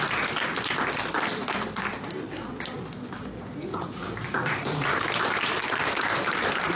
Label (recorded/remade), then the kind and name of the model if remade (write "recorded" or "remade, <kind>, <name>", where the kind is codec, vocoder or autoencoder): remade, vocoder, BigVGAN v2